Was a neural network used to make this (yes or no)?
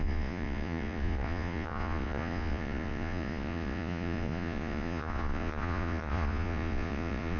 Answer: yes